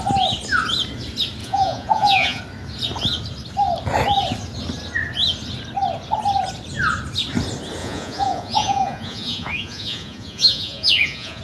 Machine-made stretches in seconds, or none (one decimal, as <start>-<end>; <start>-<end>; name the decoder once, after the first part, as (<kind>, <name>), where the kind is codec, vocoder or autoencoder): 1.4-2.4 (vocoder, Vocos); 7.8-11.4